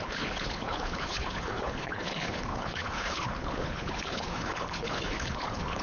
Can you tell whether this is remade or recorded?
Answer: remade